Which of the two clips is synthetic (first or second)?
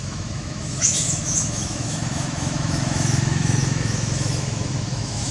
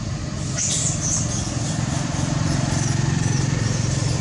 first